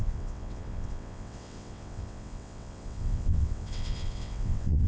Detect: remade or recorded remade